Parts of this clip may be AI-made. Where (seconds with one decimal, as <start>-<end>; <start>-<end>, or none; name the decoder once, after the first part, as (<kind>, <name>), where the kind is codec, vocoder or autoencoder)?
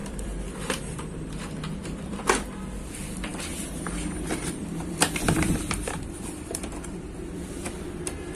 0.0-3.3 (vocoder, BigVGAN v2); 4.3-8.3